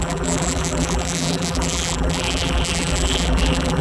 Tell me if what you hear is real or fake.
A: fake